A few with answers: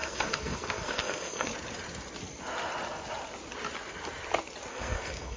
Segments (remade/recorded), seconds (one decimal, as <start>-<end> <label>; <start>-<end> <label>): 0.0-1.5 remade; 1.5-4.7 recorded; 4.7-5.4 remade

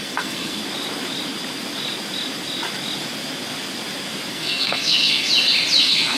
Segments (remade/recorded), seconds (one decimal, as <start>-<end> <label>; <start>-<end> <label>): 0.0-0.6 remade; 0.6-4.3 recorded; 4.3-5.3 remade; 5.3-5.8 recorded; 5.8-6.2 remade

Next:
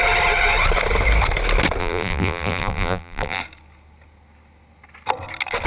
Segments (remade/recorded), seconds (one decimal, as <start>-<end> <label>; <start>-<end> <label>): 0.0-1.8 recorded; 1.8-3.4 remade; 3.4-5.7 recorded